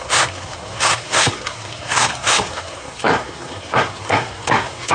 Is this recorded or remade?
remade